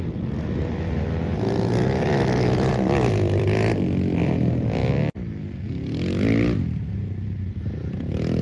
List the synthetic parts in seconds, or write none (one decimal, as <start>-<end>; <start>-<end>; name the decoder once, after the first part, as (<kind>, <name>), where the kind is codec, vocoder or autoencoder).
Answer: 0.0-4.8 (vocoder, BigVGAN v2); 7.4-8.4

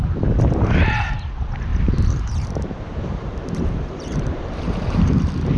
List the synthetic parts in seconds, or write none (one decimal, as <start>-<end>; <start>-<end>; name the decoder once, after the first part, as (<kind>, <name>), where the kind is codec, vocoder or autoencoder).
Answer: 1.7-5.1 (vocoder, BigVGAN v2)

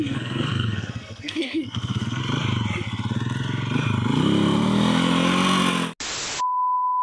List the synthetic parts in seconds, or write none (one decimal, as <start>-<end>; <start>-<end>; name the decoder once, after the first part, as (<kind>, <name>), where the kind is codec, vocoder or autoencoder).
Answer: 0.0-2.2 (codec, SNAC); 6.4-7.0

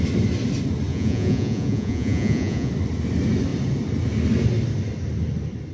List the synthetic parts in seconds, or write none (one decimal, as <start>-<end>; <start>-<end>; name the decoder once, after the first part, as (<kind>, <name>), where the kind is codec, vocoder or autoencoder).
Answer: 0.9-2.7 (vocoder, Vocos)